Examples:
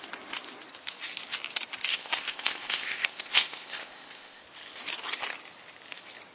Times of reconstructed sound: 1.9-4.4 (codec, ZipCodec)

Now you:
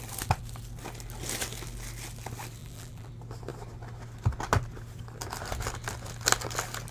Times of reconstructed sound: 2.6-3.1 (vocoder, BigVGAN v2)

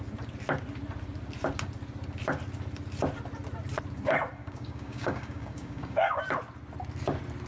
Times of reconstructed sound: 4.4-6.2 (codec, DAC)

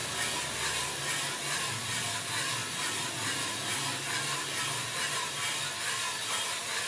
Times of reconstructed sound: none

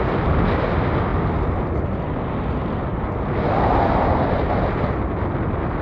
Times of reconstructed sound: none

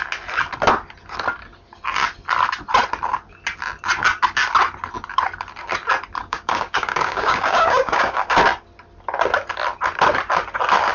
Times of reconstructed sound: 6.2-8.3 (codec, DAC)